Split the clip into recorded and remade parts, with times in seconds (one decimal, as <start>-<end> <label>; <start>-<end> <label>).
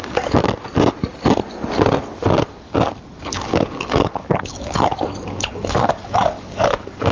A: 0.0-0.5 remade; 0.5-3.2 recorded; 3.2-7.1 remade